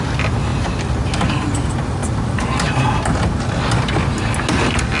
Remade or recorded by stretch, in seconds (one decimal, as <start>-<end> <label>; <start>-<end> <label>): 0.0-5.0 recorded